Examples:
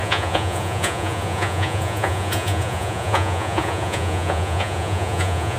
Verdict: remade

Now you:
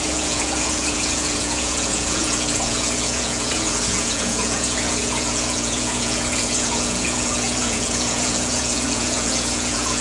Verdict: remade